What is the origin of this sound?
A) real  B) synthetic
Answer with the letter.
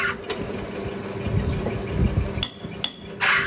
A